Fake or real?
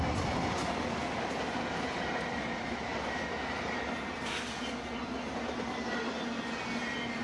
real